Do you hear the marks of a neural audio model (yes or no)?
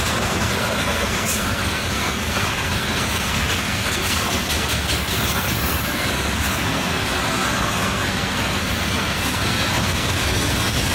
yes